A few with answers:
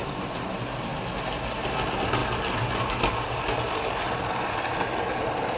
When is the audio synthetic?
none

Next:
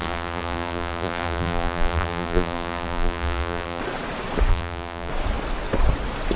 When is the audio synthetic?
0.0-3.8 (vocoder, BigVGAN v2); 4.5-5.1

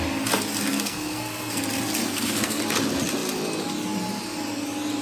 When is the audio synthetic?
0.7-1.6 (codec, SNAC); 2.0-2.6